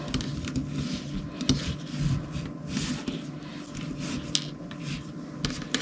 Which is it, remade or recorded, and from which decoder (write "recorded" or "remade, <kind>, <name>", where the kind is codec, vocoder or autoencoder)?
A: recorded